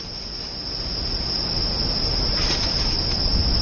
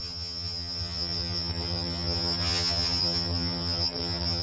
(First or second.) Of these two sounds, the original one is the first